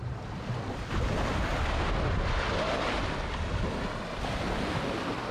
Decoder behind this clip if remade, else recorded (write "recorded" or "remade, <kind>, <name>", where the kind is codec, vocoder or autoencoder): recorded